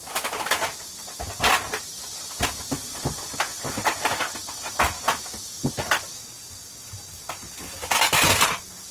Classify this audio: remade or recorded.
recorded